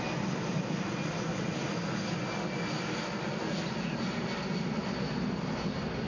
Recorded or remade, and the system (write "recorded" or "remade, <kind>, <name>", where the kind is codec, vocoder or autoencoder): recorded